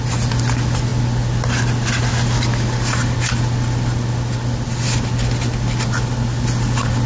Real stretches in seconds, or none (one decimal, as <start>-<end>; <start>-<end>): 0.0-7.1